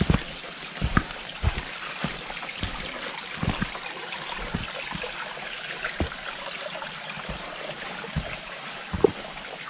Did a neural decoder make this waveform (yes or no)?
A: no